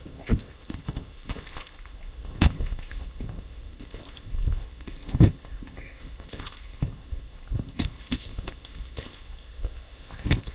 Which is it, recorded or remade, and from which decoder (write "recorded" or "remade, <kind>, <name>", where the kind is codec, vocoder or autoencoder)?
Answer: remade, codec, ZipCodec